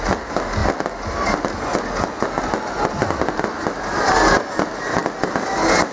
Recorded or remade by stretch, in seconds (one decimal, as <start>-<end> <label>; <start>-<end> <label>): 0.0-5.9 recorded